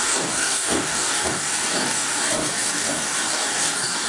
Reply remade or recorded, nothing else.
remade